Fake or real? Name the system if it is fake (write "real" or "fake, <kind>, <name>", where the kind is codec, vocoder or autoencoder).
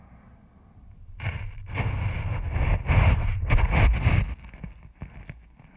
real